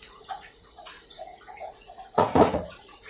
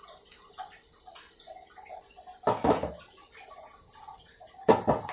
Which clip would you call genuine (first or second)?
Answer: second